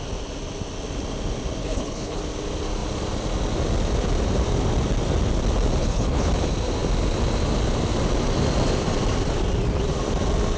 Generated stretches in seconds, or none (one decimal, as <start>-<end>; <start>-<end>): 1.6-2.2; 5.8-6.3